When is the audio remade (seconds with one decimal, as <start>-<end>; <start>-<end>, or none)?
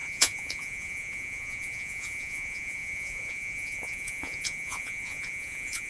0.0-5.9